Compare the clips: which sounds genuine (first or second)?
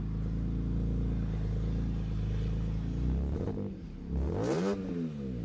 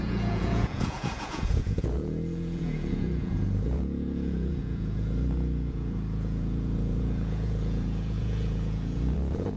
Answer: first